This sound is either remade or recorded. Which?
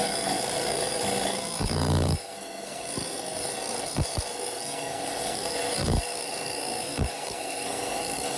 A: remade